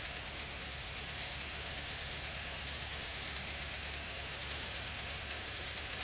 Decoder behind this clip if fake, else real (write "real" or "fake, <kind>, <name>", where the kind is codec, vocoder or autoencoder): fake, autoencoder, DAC-VAE